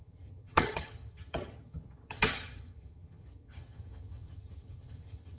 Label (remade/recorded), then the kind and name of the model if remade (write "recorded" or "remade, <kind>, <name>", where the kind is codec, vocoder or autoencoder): remade, vocoder, HiFi-GAN